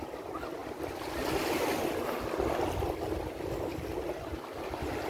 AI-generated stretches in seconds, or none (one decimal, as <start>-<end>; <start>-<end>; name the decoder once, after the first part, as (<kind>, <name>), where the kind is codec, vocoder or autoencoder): none